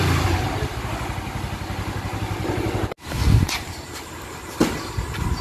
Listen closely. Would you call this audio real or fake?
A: real